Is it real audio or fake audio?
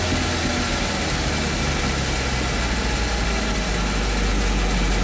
real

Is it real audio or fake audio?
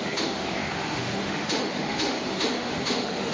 fake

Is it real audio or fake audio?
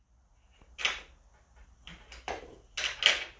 real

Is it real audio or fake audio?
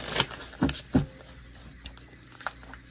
real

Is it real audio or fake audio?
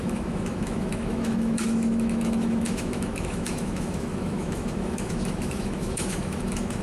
fake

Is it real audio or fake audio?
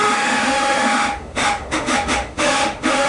fake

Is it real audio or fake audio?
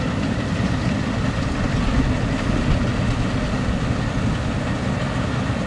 real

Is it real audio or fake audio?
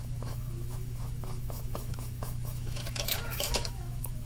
fake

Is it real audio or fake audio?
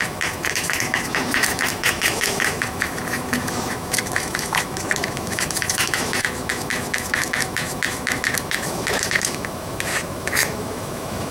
fake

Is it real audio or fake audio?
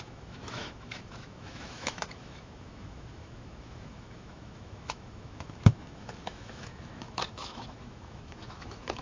fake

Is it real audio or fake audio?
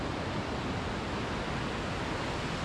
real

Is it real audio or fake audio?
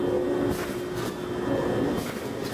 real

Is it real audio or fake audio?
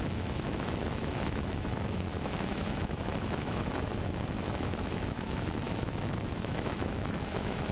fake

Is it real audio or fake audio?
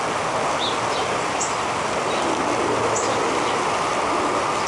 real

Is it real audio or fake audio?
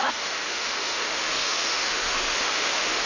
fake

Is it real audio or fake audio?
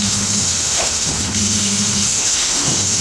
fake